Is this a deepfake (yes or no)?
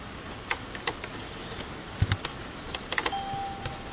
no